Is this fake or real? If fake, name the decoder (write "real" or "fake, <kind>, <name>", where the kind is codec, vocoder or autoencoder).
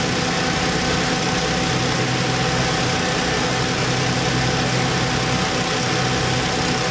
real